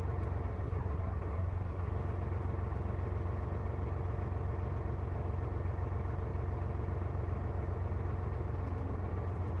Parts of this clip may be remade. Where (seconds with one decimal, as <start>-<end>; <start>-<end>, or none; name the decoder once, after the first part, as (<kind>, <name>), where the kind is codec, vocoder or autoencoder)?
0.5-1.9 (codec, SNAC)